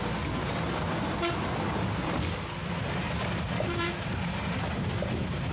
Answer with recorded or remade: recorded